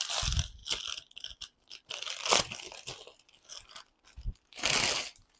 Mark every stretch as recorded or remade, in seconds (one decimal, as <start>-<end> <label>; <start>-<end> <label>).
0.0-5.4 recorded